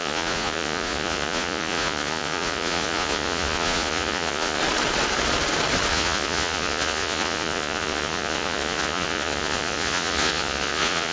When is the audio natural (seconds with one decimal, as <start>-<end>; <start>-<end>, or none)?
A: 4.6-5.9